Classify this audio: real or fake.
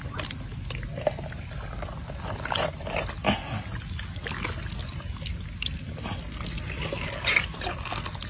real